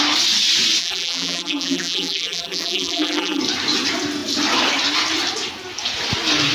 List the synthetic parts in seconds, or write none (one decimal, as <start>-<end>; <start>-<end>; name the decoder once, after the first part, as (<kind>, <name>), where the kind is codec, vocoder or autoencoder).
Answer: 0.8-3.4 (vocoder, BigVGAN v2)